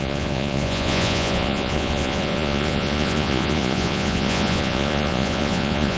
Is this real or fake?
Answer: fake